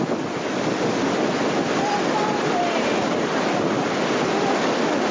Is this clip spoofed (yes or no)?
no